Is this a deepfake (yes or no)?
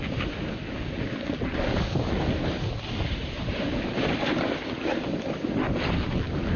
no